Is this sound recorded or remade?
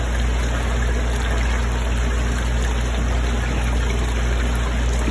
recorded